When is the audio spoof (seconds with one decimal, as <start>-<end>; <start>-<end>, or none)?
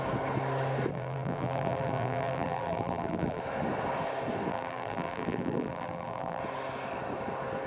0.9-3.4; 4.5-6.4